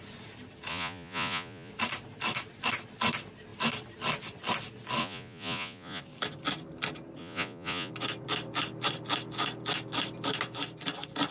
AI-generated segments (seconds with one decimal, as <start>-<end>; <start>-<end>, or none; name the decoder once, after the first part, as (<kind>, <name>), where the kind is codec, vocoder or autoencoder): 0.7-1.7 (vocoder, Vocos); 5.0-6.0; 7.2-7.9